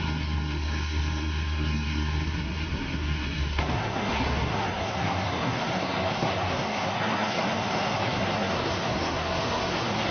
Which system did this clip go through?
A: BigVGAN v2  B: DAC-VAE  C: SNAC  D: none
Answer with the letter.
C